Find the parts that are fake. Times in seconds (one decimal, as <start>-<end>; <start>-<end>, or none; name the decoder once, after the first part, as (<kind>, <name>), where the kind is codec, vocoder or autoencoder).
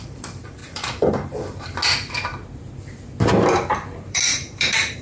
0.0-1.8 (vocoder, BigVGAN v2); 3.7-5.0